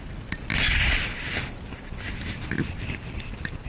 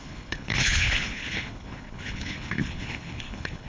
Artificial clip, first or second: second